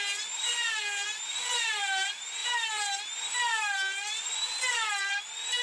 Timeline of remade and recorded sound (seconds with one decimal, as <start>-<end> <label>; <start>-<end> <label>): 0.0-2.4 recorded; 2.4-3.0 remade; 3.0-5.6 recorded